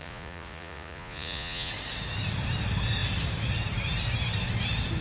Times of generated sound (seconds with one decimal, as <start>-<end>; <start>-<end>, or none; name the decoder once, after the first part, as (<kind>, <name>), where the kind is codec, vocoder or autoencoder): 0.0-1.7 (vocoder, Vocos)